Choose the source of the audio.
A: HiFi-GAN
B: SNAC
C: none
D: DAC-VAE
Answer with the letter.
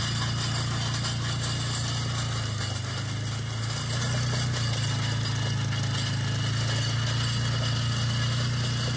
C